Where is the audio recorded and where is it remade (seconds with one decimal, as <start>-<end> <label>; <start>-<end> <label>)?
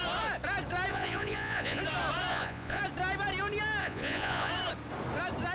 0.0-0.9 recorded; 0.9-1.8 remade; 1.8-2.3 recorded; 2.3-2.8 remade; 2.8-3.8 recorded; 3.8-4.5 remade; 4.5-5.5 recorded